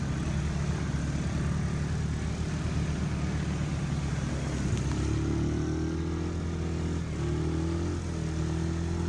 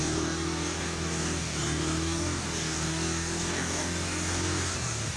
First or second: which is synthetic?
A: second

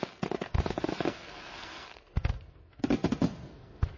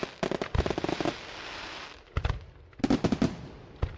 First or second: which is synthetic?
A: first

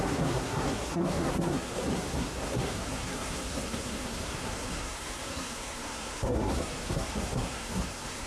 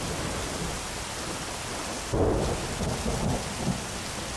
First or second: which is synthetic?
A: first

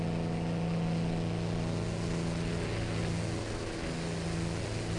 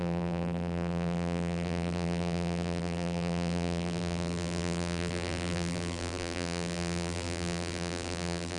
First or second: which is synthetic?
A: second